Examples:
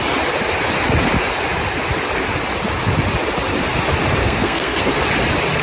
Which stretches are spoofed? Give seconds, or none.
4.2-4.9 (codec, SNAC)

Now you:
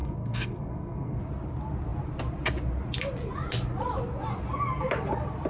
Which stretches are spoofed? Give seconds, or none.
0.0-1.2 (codec, SNAC)

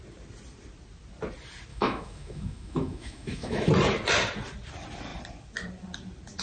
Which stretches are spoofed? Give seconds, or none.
1.7-3.7 (autoencoder, DAC-VAE)

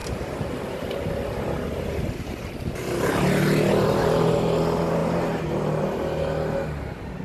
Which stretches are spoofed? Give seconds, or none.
none

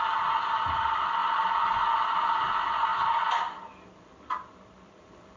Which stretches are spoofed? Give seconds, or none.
none

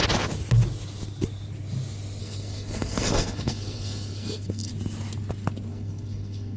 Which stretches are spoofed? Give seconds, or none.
2.2-4.7 (codec, SNAC); 5.7-6.6

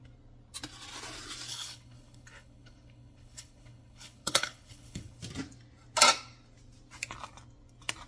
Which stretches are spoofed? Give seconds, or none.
1.5-5.2 (codec, HILCodec)

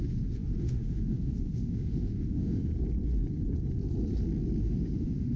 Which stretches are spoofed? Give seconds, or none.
0.0-2.7 (autoencoder, DAC-VAE); 4.6-5.4